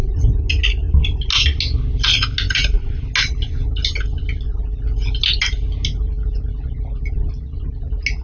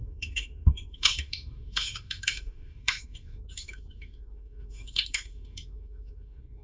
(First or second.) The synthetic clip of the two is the second